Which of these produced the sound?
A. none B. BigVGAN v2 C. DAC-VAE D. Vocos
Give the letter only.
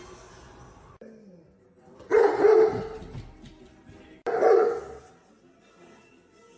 A